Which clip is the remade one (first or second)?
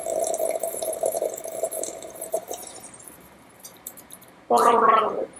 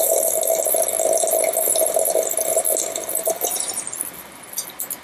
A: first